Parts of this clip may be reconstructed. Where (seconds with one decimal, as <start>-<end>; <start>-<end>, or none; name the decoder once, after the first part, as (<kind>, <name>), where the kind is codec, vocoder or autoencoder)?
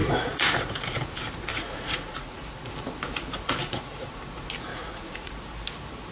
0.0-1.0 (vocoder, Vocos); 1.5-2.4; 3.6-4.1; 4.7-5.3